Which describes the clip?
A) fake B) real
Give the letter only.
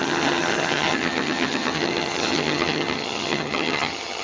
A